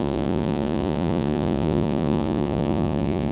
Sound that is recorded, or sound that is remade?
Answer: remade